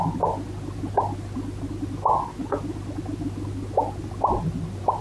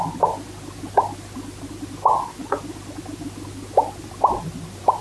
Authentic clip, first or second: first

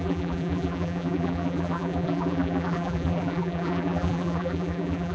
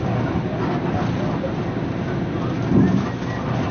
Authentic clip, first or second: second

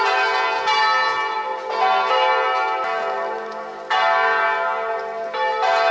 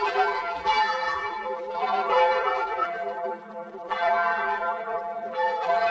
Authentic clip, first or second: first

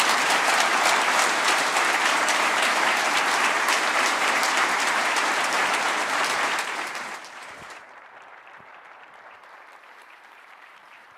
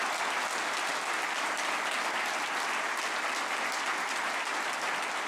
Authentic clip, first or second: second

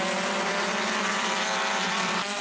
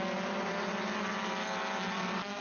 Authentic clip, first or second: second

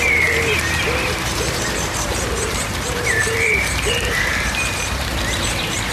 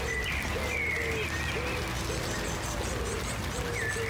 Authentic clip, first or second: second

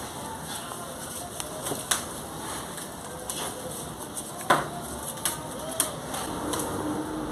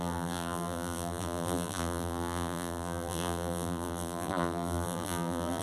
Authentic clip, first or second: first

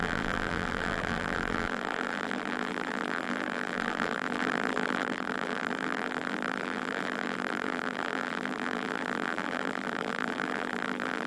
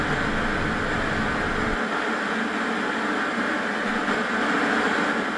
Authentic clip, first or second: second